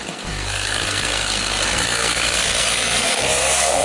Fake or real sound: fake